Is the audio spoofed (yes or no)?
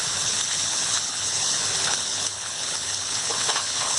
yes